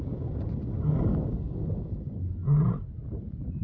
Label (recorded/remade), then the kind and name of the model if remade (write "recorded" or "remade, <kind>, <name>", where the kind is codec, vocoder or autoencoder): recorded